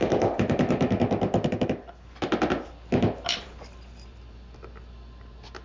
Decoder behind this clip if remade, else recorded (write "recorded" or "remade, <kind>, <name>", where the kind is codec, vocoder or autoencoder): recorded